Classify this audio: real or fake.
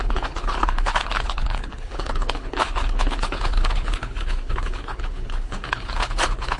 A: fake